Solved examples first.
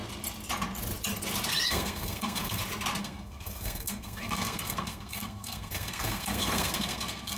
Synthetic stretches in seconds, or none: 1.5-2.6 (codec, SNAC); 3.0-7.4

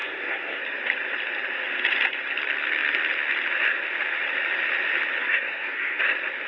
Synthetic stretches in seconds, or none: 0.0-0.6 (codec, SNAC); 5.2-6.0

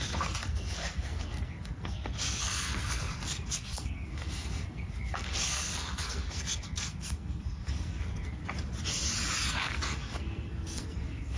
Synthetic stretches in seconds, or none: 0.0-8.4 (codec, SNAC); 9.5-11.4

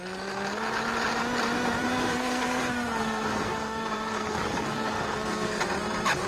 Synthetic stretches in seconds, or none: 1.8-5.6 (codec, SNAC)

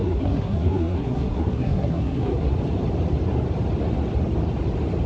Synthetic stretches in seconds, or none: 0.0-2.5 (codec, SNAC)